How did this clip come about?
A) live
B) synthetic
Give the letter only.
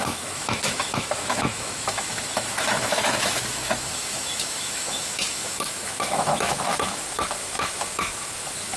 B